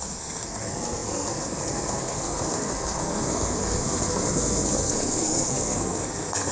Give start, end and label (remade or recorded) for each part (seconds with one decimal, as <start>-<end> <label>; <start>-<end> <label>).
0.0-6.5 remade